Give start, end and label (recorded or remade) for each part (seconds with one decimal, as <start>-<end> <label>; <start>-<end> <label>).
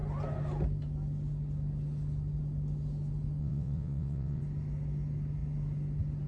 0.0-3.4 recorded; 3.4-4.4 remade; 4.4-6.3 recorded